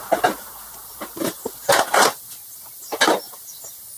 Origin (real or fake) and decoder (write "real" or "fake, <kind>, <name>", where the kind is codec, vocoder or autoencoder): real